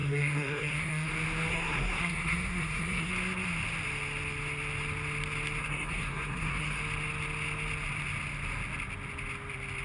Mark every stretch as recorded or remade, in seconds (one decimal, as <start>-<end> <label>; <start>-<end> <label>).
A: 0.0-1.1 remade; 1.1-1.5 recorded; 1.5-3.1 remade; 3.1-5.6 recorded; 5.6-6.8 remade; 6.8-9.8 recorded